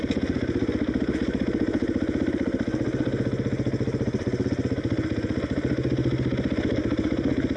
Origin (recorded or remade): recorded